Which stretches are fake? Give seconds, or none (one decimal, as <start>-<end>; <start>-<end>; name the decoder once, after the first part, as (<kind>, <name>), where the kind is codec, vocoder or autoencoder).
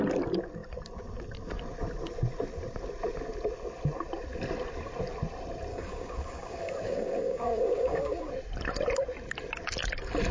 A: 5.7-8.3 (codec, DAC)